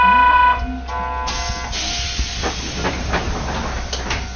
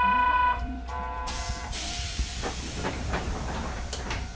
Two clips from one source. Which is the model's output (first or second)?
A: second